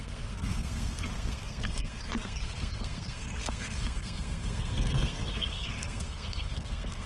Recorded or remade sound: remade